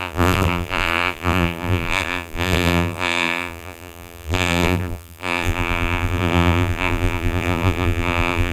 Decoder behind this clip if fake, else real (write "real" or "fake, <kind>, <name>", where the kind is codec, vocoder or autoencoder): fake, vocoder, BigVGAN v2